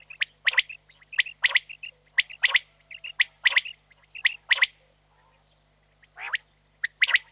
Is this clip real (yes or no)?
yes